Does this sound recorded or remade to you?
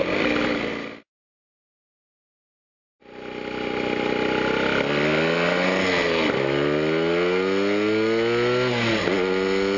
recorded